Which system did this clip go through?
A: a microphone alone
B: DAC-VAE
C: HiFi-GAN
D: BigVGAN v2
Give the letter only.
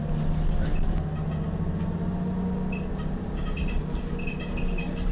A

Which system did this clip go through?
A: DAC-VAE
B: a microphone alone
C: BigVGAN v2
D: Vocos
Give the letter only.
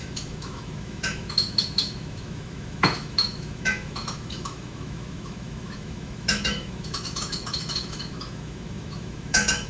A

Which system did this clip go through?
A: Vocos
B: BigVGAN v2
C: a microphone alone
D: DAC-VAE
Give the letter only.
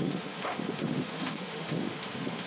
D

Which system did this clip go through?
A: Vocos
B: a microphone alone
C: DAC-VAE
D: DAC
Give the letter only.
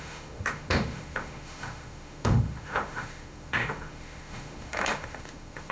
C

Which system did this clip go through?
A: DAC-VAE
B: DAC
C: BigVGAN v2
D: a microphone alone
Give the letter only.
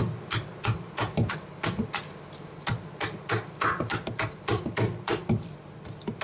D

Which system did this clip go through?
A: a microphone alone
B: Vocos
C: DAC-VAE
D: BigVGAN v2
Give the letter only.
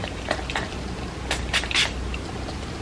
A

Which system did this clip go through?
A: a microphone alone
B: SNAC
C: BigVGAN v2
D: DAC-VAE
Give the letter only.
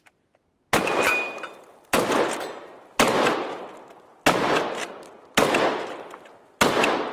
A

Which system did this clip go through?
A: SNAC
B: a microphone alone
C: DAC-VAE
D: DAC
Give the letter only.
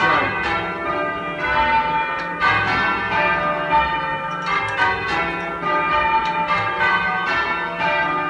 B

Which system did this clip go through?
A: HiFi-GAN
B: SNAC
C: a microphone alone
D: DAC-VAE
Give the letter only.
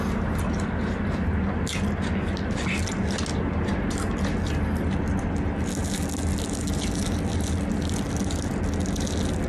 C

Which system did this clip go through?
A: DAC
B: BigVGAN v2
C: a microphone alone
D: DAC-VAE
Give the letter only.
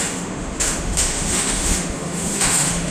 D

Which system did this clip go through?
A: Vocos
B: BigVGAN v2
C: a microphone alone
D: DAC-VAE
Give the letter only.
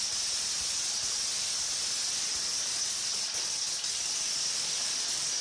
C